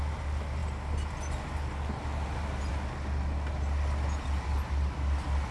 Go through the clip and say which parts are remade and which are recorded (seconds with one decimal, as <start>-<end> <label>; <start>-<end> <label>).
0.0-5.5 recorded